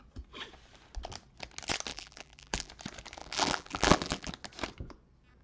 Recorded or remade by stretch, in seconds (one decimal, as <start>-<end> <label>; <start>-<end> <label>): 0.0-1.9 recorded; 1.9-2.7 remade; 2.7-3.2 recorded; 3.2-4.3 remade; 4.3-5.4 recorded